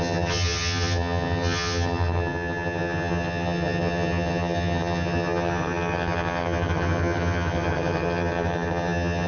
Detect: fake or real fake